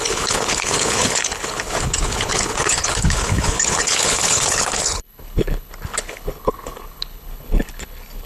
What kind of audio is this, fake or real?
fake